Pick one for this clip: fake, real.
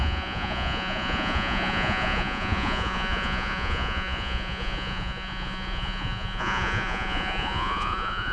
fake